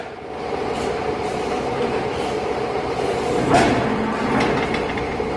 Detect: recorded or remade remade